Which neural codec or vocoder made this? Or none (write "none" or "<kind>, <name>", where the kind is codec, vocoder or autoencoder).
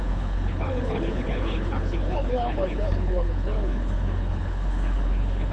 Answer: codec, HILCodec